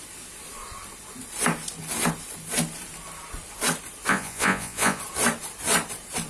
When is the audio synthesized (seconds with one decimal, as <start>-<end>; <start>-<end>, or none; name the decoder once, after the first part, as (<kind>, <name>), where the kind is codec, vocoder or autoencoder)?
4.1-5.0 (vocoder, Vocos)